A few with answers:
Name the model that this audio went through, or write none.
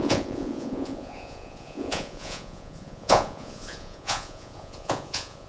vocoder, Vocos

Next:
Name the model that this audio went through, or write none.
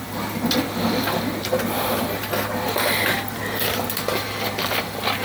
none